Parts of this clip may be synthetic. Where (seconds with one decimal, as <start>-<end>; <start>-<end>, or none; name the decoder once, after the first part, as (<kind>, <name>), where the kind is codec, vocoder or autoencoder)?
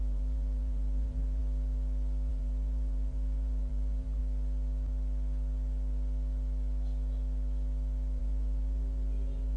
0.0-1.4 (vocoder, BigVGAN v2); 2.3-4.2; 8.2-9.6